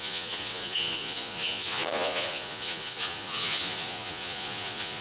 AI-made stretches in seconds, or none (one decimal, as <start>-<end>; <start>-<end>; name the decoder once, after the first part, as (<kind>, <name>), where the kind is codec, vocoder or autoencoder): 0.0-5.0 (vocoder, Vocos)

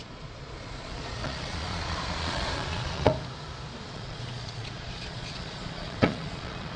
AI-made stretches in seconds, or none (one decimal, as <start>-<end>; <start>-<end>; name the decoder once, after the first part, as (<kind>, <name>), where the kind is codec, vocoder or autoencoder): 0.0-3.1 (vocoder, Vocos); 3.8-6.8

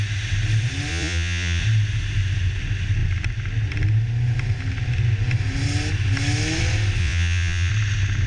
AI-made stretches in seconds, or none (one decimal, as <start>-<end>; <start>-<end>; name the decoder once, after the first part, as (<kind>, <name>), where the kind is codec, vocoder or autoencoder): 0.9-1.6 (vocoder, Vocos); 7.0-7.7

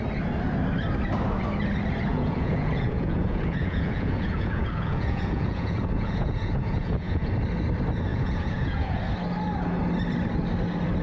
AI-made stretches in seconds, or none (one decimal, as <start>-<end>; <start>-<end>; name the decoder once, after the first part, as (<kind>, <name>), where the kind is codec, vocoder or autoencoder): 2.1-7.3 (vocoder, Vocos); 8.1-9.0

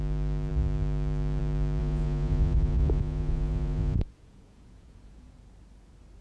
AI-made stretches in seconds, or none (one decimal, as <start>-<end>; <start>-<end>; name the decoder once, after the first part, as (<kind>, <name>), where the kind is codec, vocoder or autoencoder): 1.8-5.4 (vocoder, Vocos)

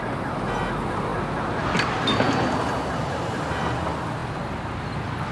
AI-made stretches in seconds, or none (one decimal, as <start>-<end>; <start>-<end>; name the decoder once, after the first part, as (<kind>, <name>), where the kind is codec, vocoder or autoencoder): none

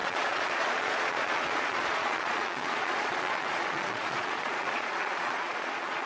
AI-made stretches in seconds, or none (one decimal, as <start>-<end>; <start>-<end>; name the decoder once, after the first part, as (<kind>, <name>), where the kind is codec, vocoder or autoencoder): 0.0-6.1 (vocoder, Vocos)

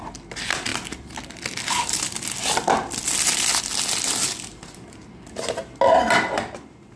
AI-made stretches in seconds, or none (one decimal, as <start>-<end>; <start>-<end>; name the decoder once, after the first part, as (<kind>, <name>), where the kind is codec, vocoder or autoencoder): none